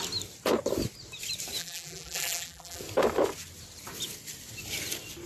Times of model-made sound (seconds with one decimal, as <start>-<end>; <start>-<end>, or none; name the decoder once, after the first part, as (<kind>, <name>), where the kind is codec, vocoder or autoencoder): 1.6-2.8 (vocoder, BigVGAN v2)